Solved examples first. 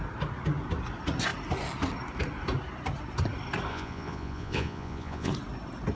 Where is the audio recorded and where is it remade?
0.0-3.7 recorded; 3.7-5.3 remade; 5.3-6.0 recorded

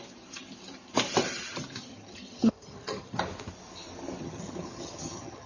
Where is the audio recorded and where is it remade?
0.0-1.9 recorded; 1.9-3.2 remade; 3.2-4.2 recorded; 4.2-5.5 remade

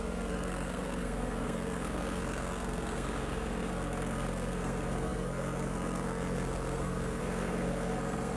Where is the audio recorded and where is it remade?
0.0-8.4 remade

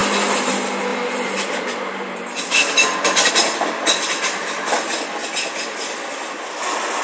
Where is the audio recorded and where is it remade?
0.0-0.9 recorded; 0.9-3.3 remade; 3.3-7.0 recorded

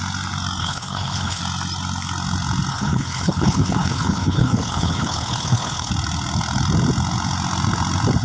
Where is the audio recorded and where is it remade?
0.0-0.6 recorded; 0.6-1.4 remade; 1.4-2.7 recorded; 2.7-5.9 remade; 5.9-8.2 recorded

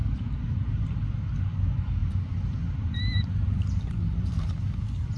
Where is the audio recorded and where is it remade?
0.0-5.2 recorded

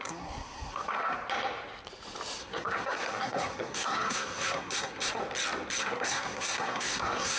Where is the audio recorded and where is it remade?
0.0-1.1 remade; 1.1-2.4 recorded; 2.4-5.2 remade; 5.2-5.8 recorded; 5.8-7.4 remade

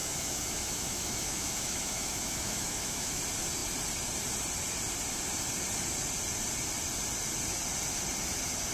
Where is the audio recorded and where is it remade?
0.0-3.2 remade; 3.2-8.7 recorded